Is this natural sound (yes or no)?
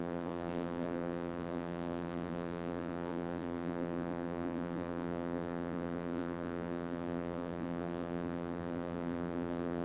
no